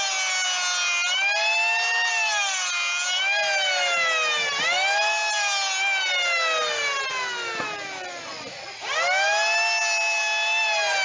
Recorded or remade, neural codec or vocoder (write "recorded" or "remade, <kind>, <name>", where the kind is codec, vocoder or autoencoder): recorded